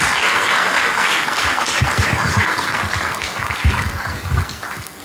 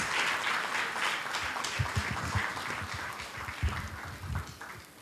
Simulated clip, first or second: first